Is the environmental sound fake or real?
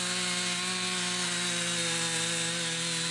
real